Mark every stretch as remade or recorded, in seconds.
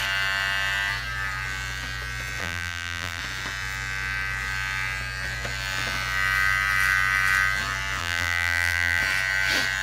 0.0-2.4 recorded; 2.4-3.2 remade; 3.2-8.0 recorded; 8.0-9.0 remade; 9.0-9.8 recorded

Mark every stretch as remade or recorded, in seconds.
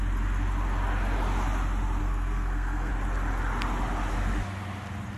0.0-2.0 recorded; 2.0-2.9 remade; 2.9-5.2 recorded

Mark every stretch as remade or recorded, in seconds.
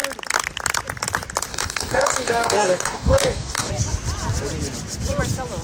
0.0-1.5 recorded; 1.5-3.7 remade; 3.7-5.6 recorded